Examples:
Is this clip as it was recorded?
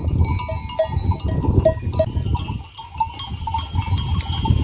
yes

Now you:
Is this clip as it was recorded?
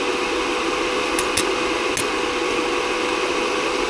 yes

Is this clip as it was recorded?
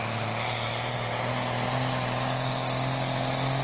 yes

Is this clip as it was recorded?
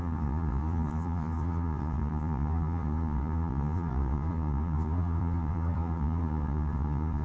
no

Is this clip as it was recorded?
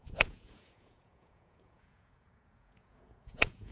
no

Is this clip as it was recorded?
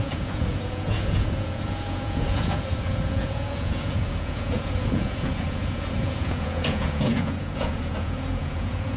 no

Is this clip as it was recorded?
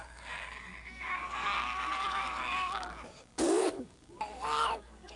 no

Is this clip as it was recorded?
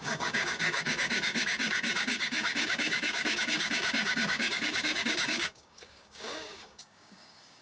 no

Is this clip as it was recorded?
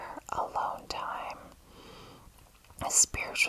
yes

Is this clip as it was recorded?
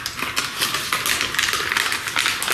yes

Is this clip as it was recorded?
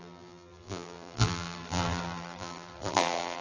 no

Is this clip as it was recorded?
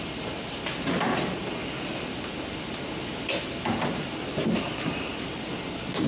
yes